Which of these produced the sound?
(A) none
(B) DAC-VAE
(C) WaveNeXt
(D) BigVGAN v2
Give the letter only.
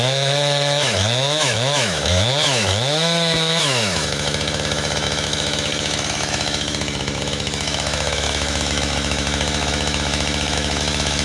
B